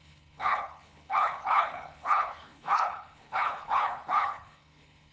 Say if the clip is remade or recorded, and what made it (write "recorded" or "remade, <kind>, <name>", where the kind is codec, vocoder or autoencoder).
remade, codec, HILCodec